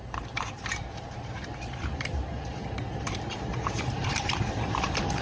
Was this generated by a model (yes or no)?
yes